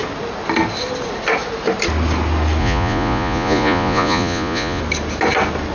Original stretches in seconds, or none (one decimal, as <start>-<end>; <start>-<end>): 0.0-2.6; 4.8-5.7